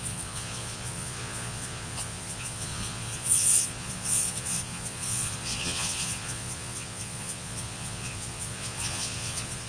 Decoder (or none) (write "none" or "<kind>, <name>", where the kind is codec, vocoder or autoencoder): vocoder, Vocos